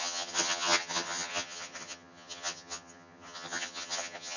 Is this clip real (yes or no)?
no